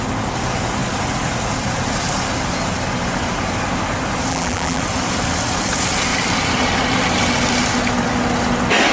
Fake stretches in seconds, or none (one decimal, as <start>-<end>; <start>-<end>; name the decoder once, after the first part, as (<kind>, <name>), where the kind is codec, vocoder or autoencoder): 4.3-4.8 (vocoder, BigVGAN v2)